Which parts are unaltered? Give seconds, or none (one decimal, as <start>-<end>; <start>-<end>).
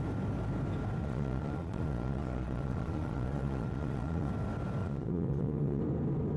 0.0-1.0; 4.3-4.8; 5.8-6.4